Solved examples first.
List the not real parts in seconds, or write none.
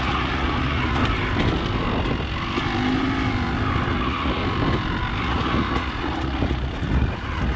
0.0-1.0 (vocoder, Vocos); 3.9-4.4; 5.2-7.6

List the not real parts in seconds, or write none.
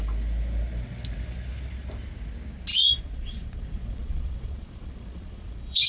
2.7-5.9 (vocoder, Vocos)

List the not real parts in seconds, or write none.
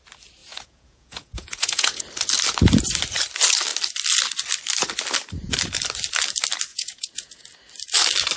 0.4-2.0 (vocoder, Vocos); 6.7-7.4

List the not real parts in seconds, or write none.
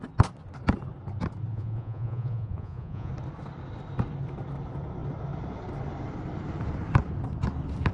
1.5-3.1 (vocoder, Vocos)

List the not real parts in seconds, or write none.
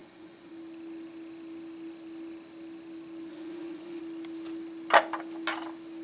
0.0-0.5 (vocoder, Vocos); 3.3-4.0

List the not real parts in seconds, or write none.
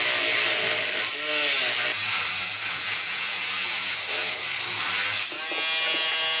2.5-4.4 (vocoder, Vocos)